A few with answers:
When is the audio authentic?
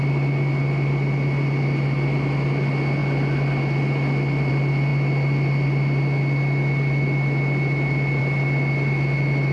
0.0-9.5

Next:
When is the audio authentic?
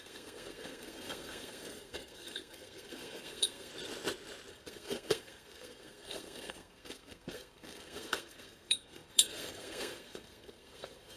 3.7-4.5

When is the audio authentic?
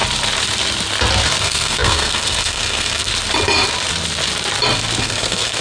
0.0-1.4; 3.1-5.0